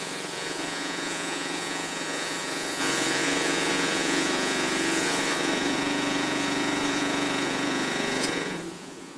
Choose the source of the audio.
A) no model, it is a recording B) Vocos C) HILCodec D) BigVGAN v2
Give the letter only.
B